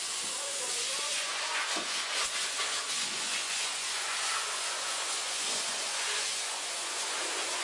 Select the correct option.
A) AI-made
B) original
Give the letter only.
A